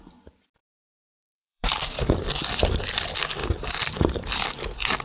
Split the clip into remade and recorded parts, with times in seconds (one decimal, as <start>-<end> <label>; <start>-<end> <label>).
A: 0.0-0.6 recorded; 0.6-2.0 remade; 2.0-3.4 recorded; 3.4-4.5 remade; 4.5-5.0 recorded